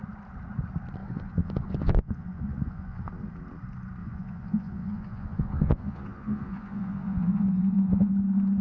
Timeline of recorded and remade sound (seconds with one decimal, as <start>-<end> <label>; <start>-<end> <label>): 0.0-1.0 recorded; 1.0-3.1 remade; 3.1-4.0 recorded; 4.0-8.1 remade; 8.1-8.6 recorded